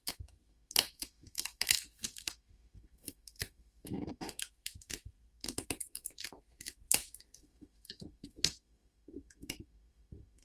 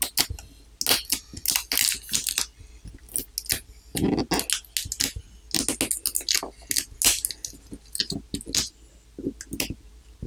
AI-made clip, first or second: first